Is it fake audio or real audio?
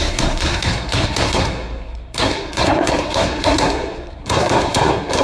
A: fake